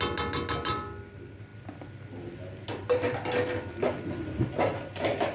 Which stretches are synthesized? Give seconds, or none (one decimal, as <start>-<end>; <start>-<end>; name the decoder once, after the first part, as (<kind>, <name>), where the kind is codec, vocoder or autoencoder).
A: none

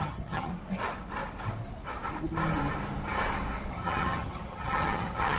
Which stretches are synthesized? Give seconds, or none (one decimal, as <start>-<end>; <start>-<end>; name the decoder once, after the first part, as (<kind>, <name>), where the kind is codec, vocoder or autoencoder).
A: 0.0-0.5 (vocoder, HiFi-GAN); 3.7-5.4

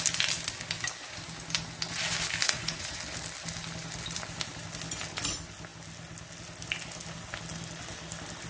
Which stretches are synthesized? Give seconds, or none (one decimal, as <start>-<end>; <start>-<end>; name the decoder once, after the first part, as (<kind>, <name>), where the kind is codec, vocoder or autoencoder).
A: 2.4-3.0 (vocoder, Vocos)